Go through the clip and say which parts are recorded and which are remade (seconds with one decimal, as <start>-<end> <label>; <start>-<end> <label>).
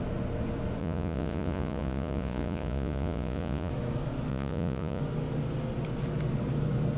0.0-0.8 recorded; 0.8-3.7 remade; 3.7-4.3 recorded; 4.3-5.0 remade; 5.0-7.0 recorded